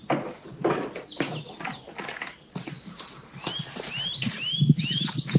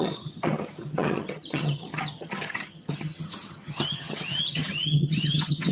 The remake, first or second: second